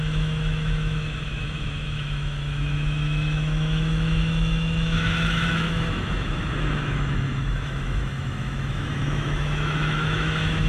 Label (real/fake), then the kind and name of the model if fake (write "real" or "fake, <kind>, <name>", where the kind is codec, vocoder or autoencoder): fake, autoencoder, DAC-VAE